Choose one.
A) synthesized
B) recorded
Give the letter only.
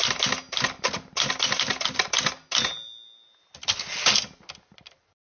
B